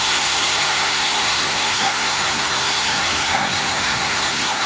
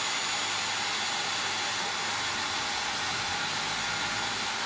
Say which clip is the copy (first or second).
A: first